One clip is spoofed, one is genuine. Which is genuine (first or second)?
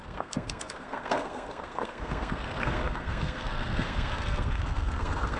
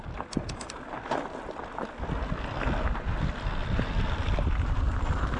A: second